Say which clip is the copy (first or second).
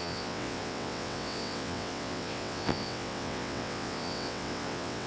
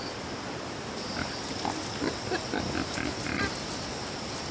first